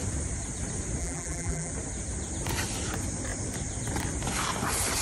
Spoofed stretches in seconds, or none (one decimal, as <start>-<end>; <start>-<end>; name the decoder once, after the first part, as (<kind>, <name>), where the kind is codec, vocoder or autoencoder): 1.0-1.7 (vocoder, BigVGAN v2)

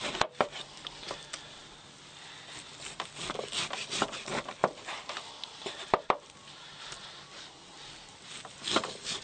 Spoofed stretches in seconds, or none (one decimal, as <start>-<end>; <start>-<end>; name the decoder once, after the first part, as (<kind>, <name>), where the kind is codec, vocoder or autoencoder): none

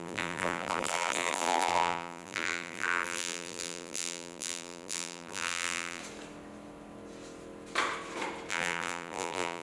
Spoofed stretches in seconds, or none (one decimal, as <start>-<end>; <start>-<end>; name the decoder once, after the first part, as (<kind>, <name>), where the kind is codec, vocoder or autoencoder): 0.0-6.0 (vocoder, BigVGAN v2); 8.5-9.6